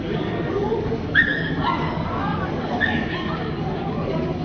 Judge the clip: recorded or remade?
remade